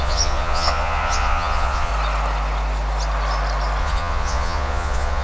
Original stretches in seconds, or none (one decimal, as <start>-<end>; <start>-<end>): 1.9-3.8